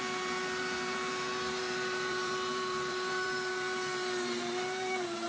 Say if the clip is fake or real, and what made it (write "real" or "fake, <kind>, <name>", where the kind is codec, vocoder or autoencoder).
fake, vocoder, BigVGAN v2